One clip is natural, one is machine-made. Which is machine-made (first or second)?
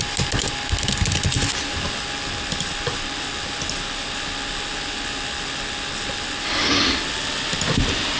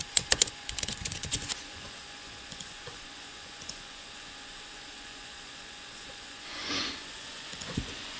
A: second